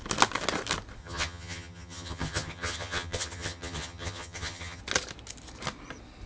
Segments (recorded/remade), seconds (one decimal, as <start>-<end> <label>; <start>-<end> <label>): 0.0-1.0 recorded; 1.0-4.8 remade; 4.8-6.3 recorded